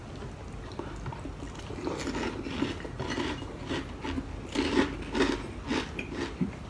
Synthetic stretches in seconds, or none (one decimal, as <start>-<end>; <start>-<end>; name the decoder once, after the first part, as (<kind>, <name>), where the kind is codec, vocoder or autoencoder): none